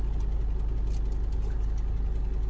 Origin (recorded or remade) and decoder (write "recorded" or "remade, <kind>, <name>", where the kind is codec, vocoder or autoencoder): recorded